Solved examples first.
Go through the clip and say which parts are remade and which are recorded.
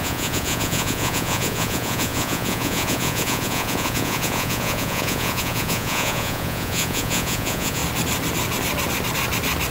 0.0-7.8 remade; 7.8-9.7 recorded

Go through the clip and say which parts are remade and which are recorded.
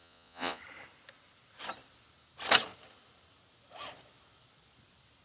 0.0-0.6 remade; 0.6-5.2 recorded